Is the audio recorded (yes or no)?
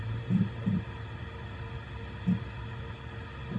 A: yes